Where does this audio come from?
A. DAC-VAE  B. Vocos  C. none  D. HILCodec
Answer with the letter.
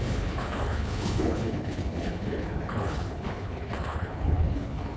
D